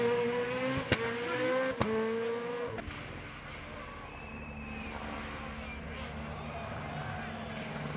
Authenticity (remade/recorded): recorded